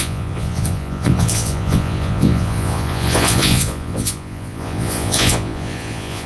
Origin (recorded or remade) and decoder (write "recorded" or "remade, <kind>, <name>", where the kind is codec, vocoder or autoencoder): remade, vocoder, Vocos